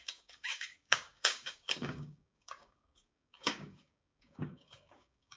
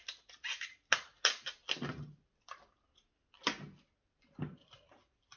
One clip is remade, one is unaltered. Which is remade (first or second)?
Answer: first